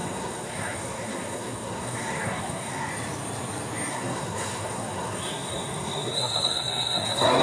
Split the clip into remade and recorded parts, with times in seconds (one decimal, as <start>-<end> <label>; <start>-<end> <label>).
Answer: 0.0-2.9 remade; 2.9-3.9 recorded; 3.9-7.4 remade